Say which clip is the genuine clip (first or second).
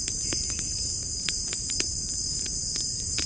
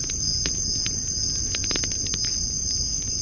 second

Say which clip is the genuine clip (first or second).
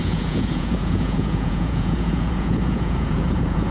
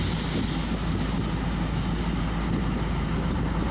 second